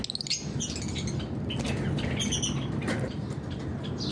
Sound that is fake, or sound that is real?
real